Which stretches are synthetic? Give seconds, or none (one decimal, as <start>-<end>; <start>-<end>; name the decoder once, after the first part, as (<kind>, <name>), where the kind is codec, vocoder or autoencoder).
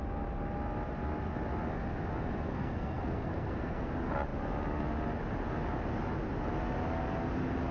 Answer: 2.5-3.9 (codec, SNAC)